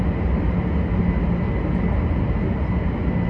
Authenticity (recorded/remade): recorded